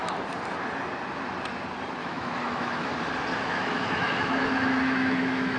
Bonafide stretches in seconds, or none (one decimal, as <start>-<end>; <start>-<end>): 0.0-2.0; 2.9-3.3